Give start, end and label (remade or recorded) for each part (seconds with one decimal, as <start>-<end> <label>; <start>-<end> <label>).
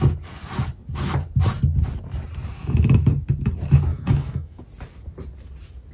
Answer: 0.0-3.9 recorded; 3.9-4.6 remade; 4.6-5.9 recorded